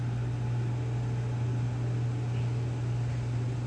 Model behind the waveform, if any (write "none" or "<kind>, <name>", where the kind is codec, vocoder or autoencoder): none